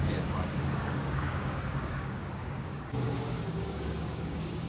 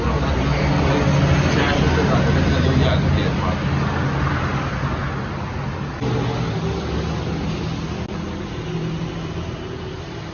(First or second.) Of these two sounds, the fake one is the first